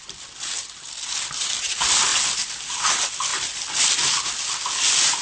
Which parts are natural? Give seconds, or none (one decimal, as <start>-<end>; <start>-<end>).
0.0-5.2